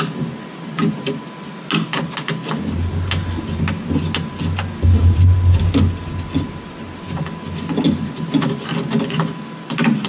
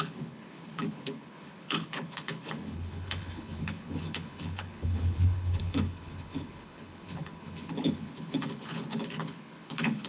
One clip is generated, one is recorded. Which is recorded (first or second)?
first